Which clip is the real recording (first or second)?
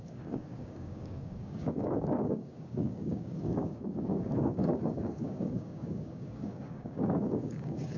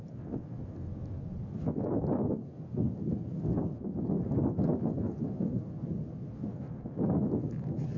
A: second